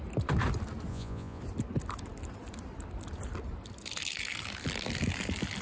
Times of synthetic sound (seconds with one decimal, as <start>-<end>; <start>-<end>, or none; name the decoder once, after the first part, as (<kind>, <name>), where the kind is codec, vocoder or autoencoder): 0.9-1.4 (vocoder, Vocos)